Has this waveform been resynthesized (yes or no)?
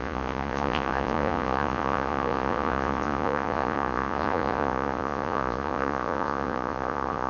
yes